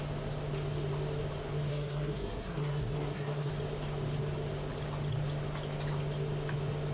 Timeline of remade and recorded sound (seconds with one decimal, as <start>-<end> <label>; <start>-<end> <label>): 0.0-1.7 recorded; 1.7-3.5 remade; 3.5-6.9 recorded

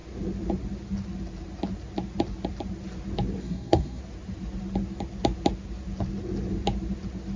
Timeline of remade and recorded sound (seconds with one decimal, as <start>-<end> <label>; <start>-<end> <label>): 0.0-3.4 recorded; 3.4-4.0 remade; 4.0-7.4 recorded

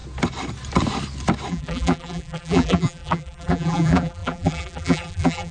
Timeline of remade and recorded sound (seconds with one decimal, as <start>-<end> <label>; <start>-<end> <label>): 0.0-1.5 recorded; 1.5-5.5 remade

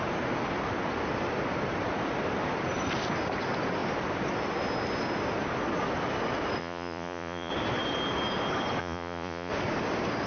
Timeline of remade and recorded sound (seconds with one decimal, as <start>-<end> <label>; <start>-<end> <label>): 0.0-6.6 recorded; 6.6-7.5 remade; 7.5-8.8 recorded; 8.8-9.5 remade; 9.5-10.3 recorded

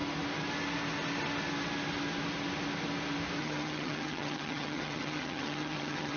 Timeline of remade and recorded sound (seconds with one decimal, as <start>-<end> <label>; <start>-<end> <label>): 0.0-3.4 recorded; 3.4-6.2 remade